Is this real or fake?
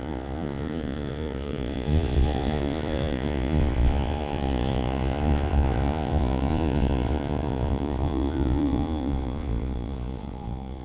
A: fake